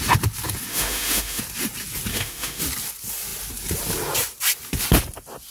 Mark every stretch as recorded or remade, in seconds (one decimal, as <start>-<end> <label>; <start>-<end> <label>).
0.0-0.7 recorded; 0.7-1.4 remade; 1.4-2.1 recorded; 2.1-2.6 remade; 2.6-5.5 recorded